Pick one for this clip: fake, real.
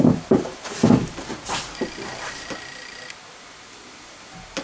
real